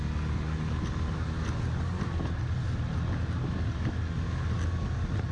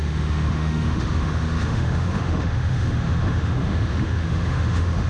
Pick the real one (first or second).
first